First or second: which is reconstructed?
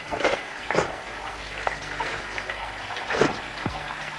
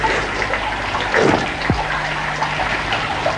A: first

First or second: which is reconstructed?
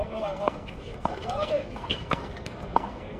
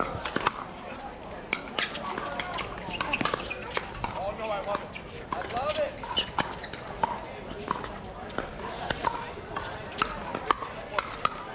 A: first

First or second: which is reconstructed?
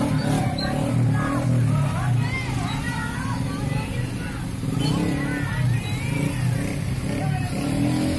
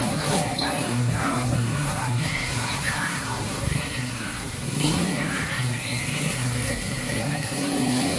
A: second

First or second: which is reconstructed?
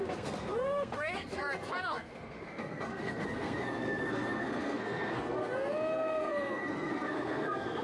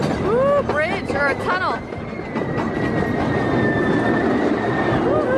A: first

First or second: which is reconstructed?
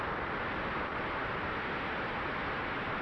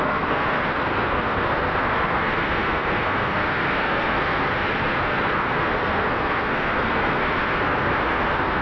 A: second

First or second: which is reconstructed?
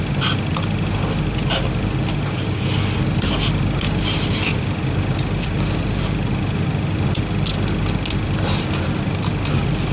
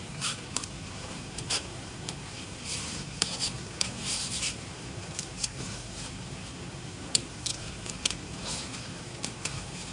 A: second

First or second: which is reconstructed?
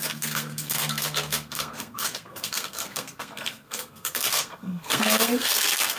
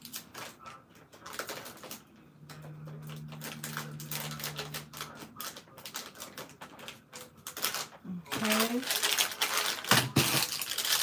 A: first